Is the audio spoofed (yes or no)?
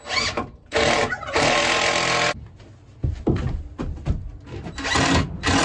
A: no